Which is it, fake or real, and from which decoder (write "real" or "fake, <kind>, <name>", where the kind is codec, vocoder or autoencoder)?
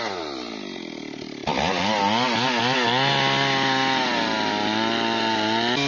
real